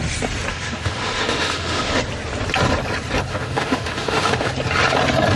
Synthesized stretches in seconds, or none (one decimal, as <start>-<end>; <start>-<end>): 0.5-2.0; 3.3-4.5